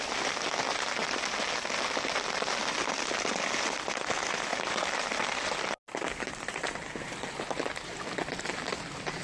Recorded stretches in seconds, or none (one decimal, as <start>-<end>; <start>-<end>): 0.0-1.0; 2.6-4.5; 5.7-9.2